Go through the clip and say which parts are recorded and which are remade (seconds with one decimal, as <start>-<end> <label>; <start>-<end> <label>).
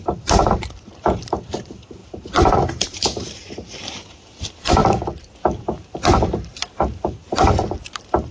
0.0-4.8 remade; 4.8-6.2 recorded; 6.2-8.3 remade